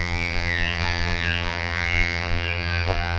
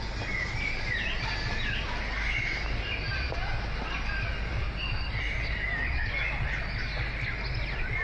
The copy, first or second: first